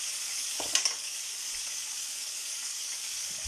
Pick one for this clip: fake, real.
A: fake